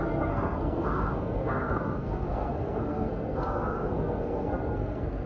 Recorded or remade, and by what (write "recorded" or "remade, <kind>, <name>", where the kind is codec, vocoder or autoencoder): remade, codec, SNAC